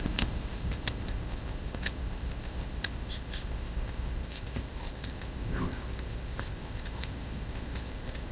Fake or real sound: fake